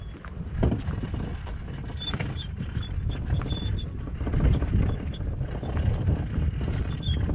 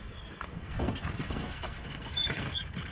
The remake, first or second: second